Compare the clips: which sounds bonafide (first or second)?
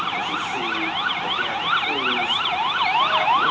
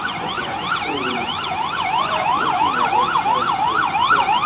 first